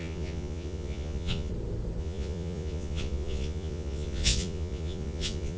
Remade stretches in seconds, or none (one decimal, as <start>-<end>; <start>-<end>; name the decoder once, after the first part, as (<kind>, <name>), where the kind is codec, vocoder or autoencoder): 0.0-1.5 (vocoder, Vocos); 2.0-5.6